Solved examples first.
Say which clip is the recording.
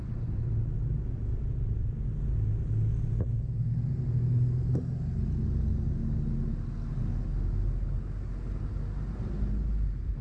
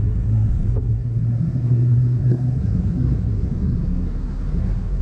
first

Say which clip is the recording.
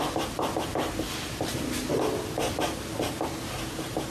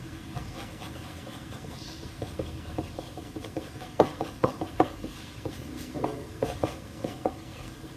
first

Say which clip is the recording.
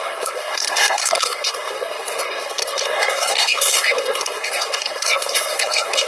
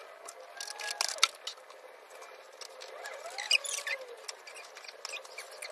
second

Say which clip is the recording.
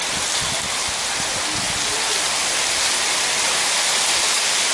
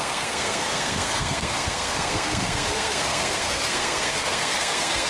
first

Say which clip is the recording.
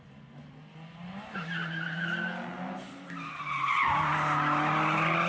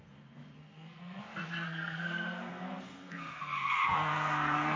first